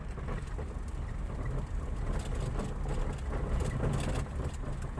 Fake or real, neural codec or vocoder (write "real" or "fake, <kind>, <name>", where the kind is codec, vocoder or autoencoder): real